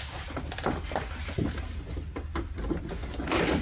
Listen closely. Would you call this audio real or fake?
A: real